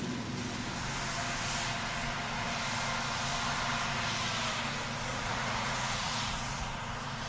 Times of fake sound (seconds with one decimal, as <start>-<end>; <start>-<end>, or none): 5.1-6.7